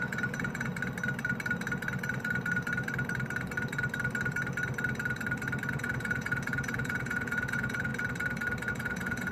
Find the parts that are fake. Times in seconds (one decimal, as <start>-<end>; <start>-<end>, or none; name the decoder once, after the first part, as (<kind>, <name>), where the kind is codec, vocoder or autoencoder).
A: 0.0-0.7 (vocoder, Vocos); 5.7-7.9; 8.7-9.3